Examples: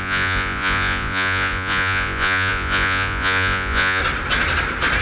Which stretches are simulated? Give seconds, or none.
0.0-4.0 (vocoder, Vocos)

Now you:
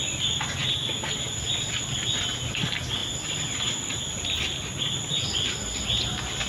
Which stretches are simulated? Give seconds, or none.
none